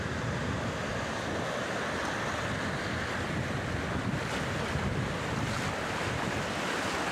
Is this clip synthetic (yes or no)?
no